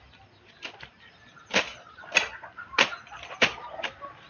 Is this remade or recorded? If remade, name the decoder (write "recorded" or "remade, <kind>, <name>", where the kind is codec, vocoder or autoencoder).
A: recorded